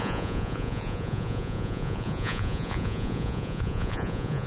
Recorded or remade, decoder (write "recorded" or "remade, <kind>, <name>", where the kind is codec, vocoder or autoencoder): remade, vocoder, Vocos